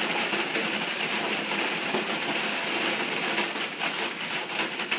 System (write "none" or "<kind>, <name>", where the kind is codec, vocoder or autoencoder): none